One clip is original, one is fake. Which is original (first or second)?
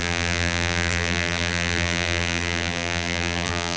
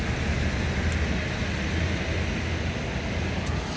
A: second